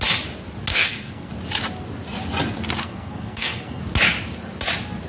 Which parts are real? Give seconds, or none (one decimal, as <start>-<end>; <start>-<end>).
0.0-0.7; 1.3-2.8; 3.8-5.1